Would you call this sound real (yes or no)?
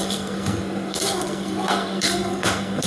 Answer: no